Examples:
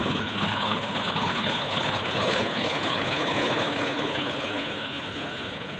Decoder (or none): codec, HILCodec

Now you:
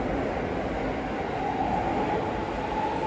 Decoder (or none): none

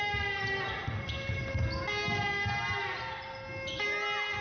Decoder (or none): none